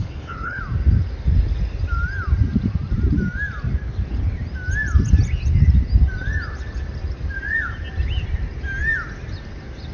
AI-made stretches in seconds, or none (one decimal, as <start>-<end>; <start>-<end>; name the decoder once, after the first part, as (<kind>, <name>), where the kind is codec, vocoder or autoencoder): 0.0-0.6 (codec, HILCodec)